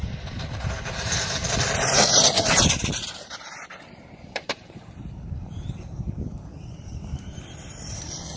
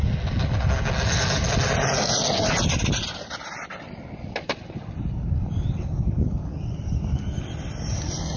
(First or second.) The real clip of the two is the second